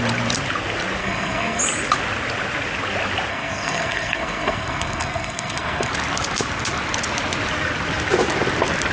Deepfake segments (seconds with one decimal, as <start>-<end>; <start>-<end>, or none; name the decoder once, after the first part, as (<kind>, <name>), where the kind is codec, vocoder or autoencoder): 1.0-1.6 (codec, SNAC); 3.3-5.9